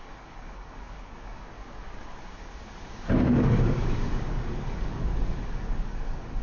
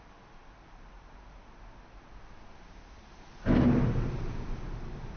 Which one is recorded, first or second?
second